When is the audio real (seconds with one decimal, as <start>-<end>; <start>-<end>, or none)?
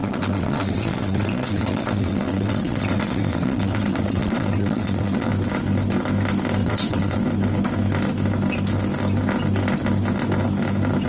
5.3-6.6; 7.2-11.1